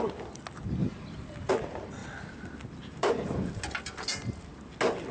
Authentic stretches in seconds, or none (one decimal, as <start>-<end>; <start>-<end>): 0.0-3.0; 3.6-5.1